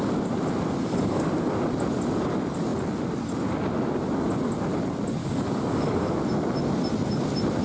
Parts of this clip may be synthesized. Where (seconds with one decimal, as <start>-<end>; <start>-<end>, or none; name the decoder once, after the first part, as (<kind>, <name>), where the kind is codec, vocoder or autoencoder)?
0.8-1.3 (codec, DAC); 5.2-6.2